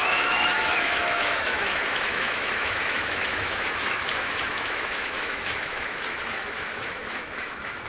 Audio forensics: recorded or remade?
remade